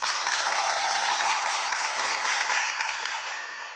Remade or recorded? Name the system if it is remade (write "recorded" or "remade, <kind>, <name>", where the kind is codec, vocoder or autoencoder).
remade, codec, SNAC